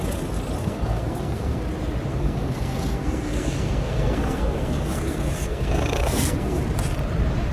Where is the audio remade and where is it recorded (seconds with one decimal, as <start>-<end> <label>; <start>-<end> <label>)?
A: 0.0-0.6 recorded; 0.6-1.6 remade; 1.6-2.1 recorded; 2.1-6.6 remade; 6.6-7.5 recorded

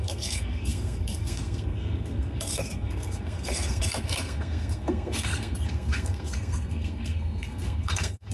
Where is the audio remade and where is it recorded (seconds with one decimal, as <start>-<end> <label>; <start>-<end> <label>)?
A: 0.0-8.3 remade

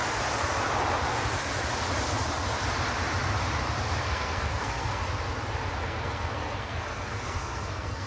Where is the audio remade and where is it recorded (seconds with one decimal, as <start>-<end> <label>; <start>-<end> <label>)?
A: 0.0-4.0 recorded; 4.0-5.0 remade; 5.0-5.8 recorded; 5.8-8.1 remade

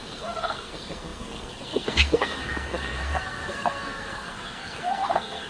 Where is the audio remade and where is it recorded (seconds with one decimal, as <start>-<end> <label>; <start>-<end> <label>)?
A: 0.0-5.5 remade

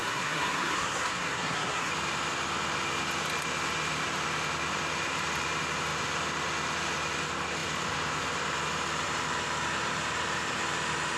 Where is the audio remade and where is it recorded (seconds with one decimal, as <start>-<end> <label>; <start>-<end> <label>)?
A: 0.0-1.9 remade; 1.9-11.2 recorded

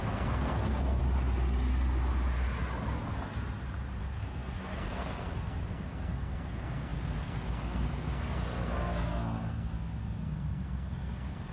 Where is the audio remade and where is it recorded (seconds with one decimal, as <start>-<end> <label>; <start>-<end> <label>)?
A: 0.0-1.0 remade; 1.0-4.0 recorded; 4.0-11.5 remade

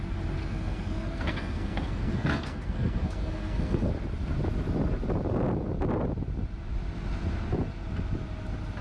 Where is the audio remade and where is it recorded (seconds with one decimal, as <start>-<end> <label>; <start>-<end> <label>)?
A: 0.0-0.4 recorded; 0.4-3.9 remade; 3.9-8.8 recorded